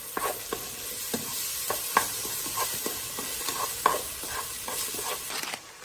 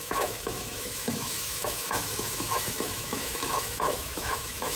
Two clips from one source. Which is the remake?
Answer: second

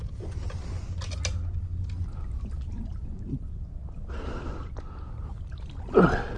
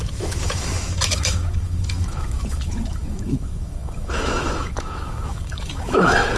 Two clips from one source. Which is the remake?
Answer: second